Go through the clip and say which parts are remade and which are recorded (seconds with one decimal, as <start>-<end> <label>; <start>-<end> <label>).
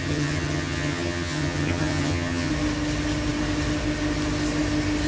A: 0.0-2.5 remade; 2.5-5.1 recorded